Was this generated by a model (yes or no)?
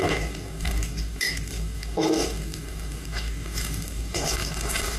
yes